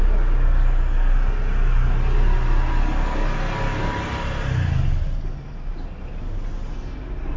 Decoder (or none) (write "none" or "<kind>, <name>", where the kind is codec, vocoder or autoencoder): none